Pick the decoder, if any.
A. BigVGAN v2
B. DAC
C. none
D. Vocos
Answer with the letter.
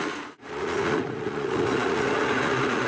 D